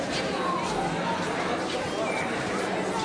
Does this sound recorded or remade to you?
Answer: recorded